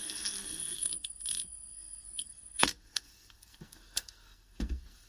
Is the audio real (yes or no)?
no